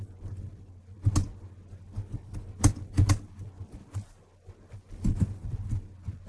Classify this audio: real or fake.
real